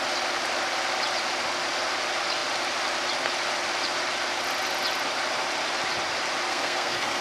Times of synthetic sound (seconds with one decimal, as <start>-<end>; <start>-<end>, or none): 6.5-7.2